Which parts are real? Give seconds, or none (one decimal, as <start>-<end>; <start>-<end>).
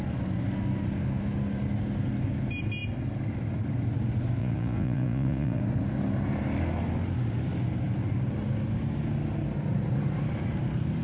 0.0-4.4; 5.6-11.0